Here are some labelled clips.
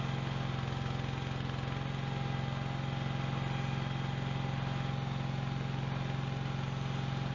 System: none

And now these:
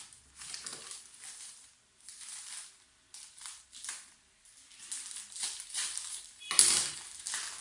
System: none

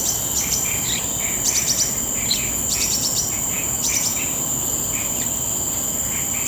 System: none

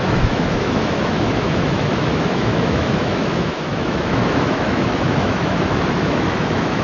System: autoencoder, DAC-VAE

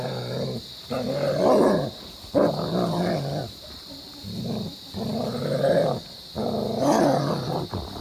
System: none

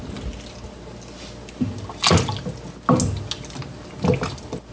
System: none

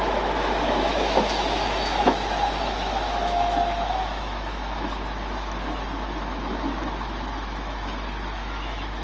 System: autoencoder, DAC-VAE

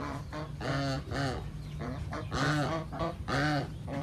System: none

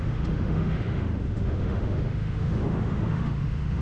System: autoencoder, DAC-VAE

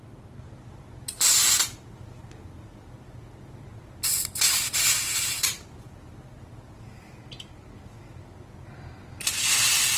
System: none